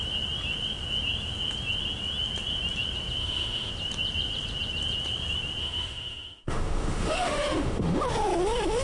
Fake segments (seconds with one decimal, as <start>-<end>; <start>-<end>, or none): 3.2-3.7; 5.6-8.0